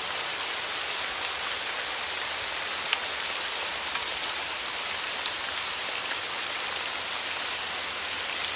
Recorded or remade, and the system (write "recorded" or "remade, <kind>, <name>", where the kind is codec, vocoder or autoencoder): recorded